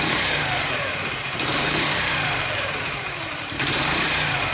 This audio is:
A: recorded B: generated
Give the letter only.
B